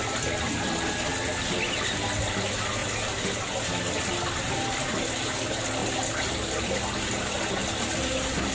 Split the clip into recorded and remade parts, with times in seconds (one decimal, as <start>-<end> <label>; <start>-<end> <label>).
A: 0.0-7.6 recorded; 7.6-8.5 remade